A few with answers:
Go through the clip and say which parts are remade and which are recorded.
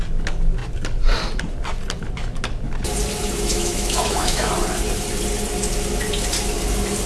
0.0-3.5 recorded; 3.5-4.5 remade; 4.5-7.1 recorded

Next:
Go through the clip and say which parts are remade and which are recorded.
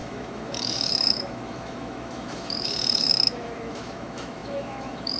0.0-5.2 remade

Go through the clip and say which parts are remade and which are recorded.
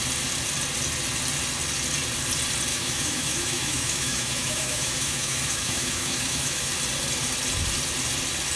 0.0-2.7 recorded; 2.7-6.7 remade; 6.7-8.6 recorded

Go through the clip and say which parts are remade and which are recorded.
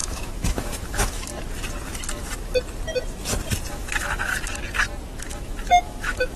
0.0-1.3 remade; 1.3-3.7 recorded; 3.7-4.3 remade; 4.3-5.2 recorded; 5.2-6.4 remade